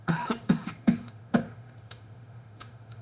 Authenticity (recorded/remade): remade